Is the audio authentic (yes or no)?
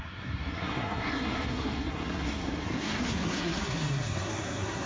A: no